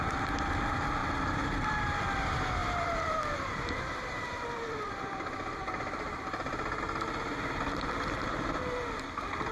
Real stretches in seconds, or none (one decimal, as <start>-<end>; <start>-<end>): 0.0-1.0; 1.8-2.6; 6.8-9.5